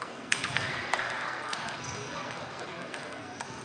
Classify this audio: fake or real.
fake